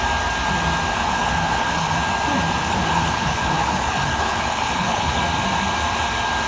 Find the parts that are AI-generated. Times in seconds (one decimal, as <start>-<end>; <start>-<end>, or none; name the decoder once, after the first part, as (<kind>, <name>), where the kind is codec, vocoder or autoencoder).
0.9-2.0 (codec, HILCodec); 2.6-5.2